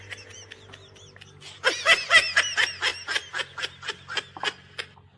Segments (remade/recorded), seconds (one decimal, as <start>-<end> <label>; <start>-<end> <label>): 0.0-5.2 recorded